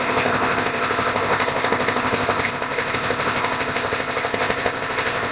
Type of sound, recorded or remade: remade